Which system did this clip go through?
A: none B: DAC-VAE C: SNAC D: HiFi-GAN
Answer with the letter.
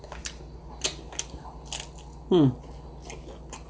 A